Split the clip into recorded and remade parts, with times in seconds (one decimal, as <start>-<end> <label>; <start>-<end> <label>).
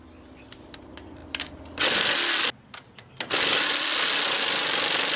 0.0-5.2 recorded